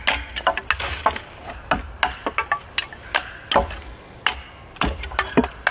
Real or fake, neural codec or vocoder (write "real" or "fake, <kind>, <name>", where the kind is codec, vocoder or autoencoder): real